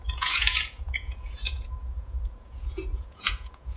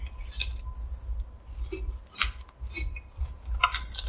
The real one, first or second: second